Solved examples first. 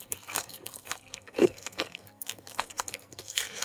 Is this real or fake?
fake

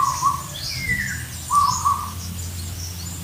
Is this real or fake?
real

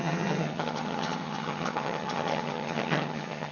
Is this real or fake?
fake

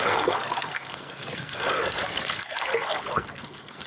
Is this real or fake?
fake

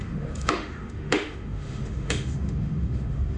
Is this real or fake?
fake